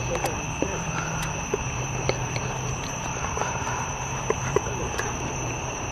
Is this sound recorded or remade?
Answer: remade